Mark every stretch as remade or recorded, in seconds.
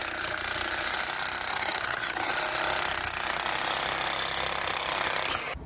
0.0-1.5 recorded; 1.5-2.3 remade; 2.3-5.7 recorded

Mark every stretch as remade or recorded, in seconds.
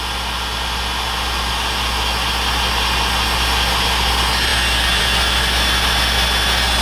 0.0-6.8 recorded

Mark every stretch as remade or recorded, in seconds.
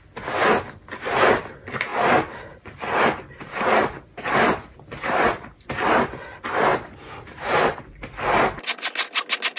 0.0-1.9 recorded; 1.9-5.6 remade; 5.6-6.7 recorded; 6.7-7.8 remade; 7.8-9.6 recorded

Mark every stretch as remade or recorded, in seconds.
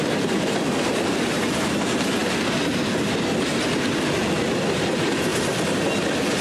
0.0-1.7 remade; 1.7-6.4 recorded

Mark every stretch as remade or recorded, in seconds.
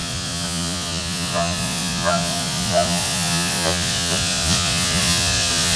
0.0-5.8 remade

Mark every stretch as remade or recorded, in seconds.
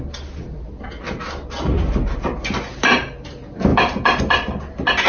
0.0-5.1 recorded